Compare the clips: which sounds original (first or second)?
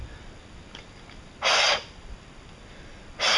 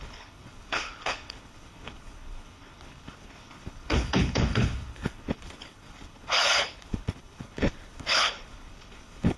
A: first